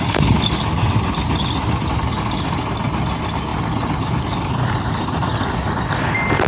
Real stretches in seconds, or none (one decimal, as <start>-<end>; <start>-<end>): 0.0-3.5; 4.1-5.2; 6.0-6.5

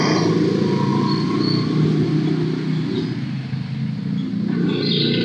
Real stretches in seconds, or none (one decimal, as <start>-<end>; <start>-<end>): 0.0-5.2

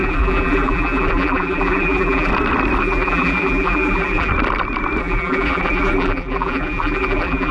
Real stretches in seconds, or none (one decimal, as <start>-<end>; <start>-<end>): 2.3-2.8; 4.3-5.0

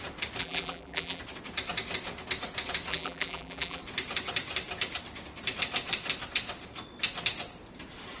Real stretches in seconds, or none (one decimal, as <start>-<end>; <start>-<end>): 0.0-0.4; 1.2-2.9; 3.8-8.2